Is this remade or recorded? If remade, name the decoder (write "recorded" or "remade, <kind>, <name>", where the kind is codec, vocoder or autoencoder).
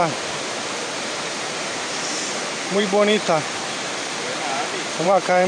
remade, vocoder, BigVGAN v2